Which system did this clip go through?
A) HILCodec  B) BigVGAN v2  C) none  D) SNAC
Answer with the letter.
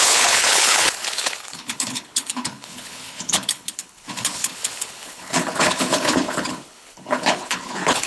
A